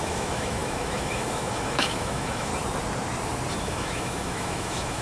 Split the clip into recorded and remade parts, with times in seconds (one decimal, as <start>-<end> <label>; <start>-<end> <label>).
0.0-2.5 remade; 2.5-3.6 recorded; 3.6-5.0 remade